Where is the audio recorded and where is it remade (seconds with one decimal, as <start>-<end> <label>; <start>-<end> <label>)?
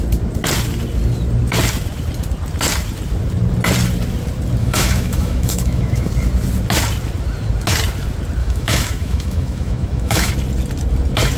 0.0-4.6 recorded; 4.6-6.1 remade; 6.1-8.4 recorded; 8.4-10.3 remade; 10.3-11.4 recorded